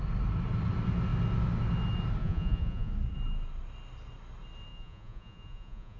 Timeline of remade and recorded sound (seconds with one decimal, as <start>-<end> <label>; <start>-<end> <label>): 0.0-2.2 recorded; 2.2-2.9 remade; 2.9-4.7 recorded; 4.7-6.0 remade